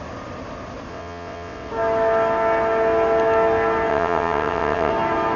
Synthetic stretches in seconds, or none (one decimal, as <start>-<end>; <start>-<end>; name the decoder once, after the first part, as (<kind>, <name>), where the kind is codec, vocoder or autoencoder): 0.9-1.7 (vocoder, WaveNeXt); 3.9-4.9